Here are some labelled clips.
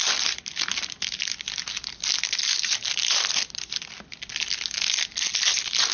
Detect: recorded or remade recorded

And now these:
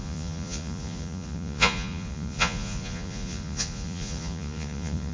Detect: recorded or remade remade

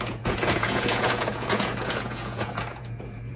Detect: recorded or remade remade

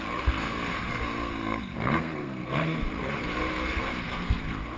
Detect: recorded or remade remade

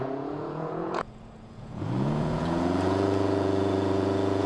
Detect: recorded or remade remade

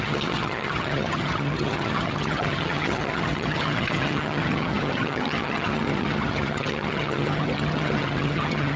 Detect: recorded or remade remade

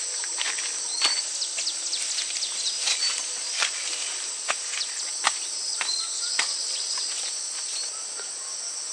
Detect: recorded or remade recorded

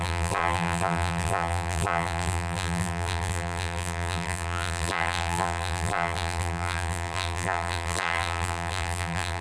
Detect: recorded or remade remade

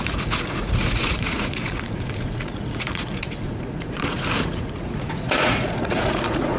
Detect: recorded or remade remade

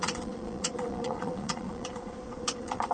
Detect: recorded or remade remade